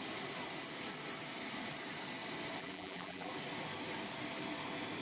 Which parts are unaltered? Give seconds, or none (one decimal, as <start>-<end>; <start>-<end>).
0.0-2.6; 3.3-5.0